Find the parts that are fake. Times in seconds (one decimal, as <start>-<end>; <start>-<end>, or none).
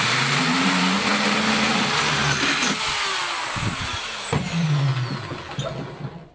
0.0-1.1; 1.7-2.2; 3.9-4.9